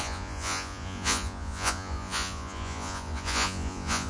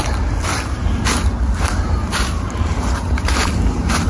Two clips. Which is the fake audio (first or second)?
first